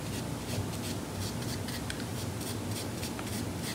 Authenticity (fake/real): real